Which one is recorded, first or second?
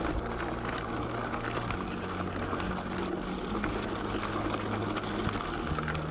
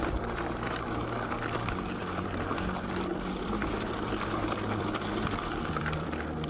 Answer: first